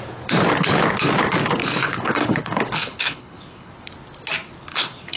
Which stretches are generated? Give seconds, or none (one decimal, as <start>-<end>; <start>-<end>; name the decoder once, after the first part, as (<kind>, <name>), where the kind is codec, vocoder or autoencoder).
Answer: 1.6-3.7 (codec, HILCodec); 4.7-5.2